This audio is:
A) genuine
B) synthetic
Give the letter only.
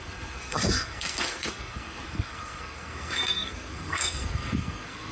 B